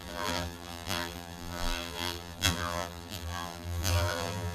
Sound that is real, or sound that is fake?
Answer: fake